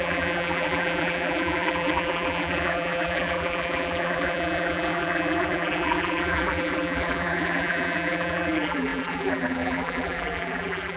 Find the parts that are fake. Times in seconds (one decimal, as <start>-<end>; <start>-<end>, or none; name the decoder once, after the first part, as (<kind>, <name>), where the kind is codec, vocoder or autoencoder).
0.0-11.0 (vocoder, BigVGAN v2)